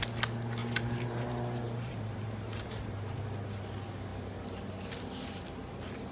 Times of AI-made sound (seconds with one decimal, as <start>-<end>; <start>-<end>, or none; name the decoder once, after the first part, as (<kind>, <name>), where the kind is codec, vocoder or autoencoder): 0.6-3.2 (vocoder, BigVGAN v2)